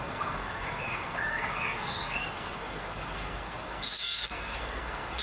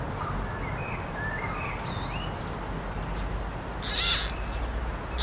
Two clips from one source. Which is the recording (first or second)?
second